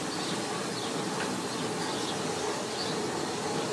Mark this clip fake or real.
real